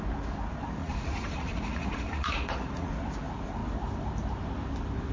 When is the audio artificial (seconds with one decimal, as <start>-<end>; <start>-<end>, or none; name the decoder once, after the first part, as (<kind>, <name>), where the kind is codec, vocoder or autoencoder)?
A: 0.8-2.9 (vocoder, Vocos)

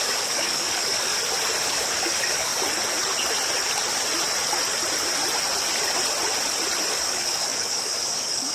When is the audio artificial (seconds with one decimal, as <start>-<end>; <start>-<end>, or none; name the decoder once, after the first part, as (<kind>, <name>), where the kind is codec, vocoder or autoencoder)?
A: 0.0-1.1 (codec, DAC); 1.7-2.5; 6.9-8.5

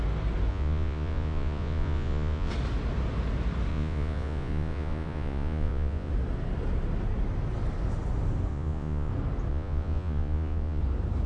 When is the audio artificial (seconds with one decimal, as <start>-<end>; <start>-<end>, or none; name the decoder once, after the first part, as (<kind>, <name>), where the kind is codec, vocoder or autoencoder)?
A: 0.5-2.5 (vocoder, Vocos); 3.7-6.1; 8.5-9.1; 9.5-10.8

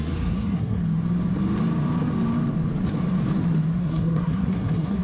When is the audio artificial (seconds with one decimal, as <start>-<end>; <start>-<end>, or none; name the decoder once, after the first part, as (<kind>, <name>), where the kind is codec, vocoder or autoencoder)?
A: 0.0-0.8 (codec, SNAC); 3.8-5.0